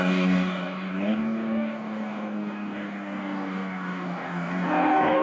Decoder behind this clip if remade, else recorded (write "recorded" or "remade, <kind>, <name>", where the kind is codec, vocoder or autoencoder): remade, codec, DAC